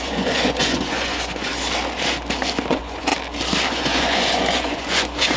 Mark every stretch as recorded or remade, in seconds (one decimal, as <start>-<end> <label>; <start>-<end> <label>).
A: 0.0-1.5 remade; 1.5-2.7 recorded; 2.7-3.1 remade; 3.1-3.7 recorded; 3.7-5.4 remade